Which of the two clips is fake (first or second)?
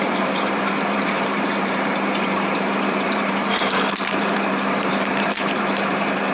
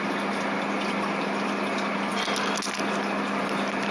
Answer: first